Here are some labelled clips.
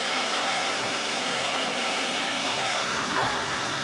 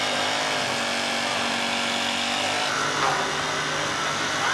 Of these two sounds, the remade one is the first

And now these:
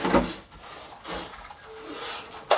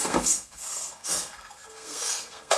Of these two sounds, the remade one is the second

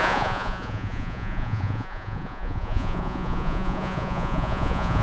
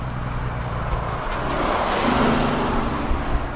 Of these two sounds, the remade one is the first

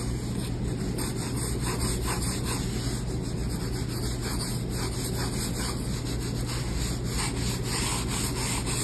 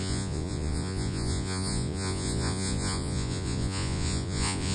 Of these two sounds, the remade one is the second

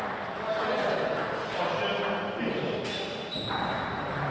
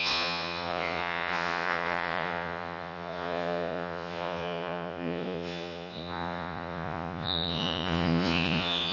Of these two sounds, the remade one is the second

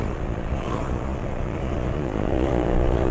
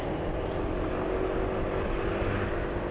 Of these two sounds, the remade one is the first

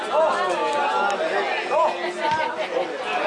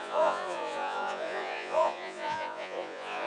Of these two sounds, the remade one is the second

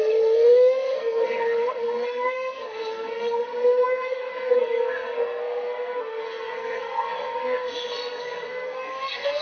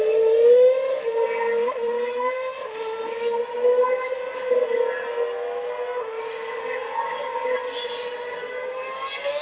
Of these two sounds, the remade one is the first